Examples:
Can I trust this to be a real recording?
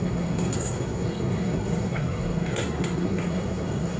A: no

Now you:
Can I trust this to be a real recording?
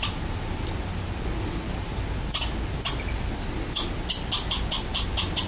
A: yes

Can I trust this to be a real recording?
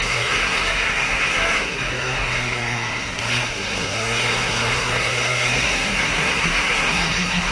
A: no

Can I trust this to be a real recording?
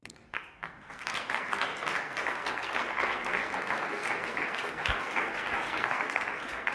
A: no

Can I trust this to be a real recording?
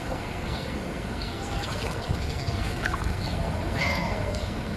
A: no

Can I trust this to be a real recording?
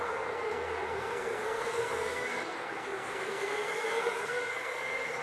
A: no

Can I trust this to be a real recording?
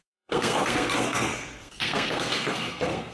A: no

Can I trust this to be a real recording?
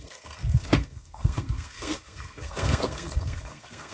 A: no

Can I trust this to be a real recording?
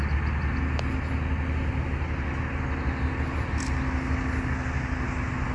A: yes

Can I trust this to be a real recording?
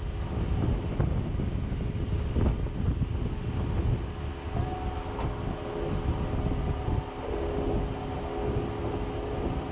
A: yes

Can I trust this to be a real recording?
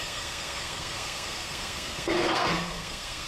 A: no